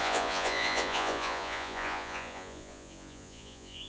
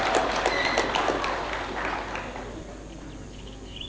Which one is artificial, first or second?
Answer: first